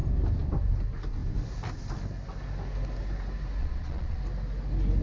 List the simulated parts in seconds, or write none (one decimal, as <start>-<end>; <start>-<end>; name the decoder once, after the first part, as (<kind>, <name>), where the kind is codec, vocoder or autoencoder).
3.6-4.2 (vocoder, Vocos)